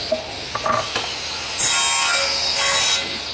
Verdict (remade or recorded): recorded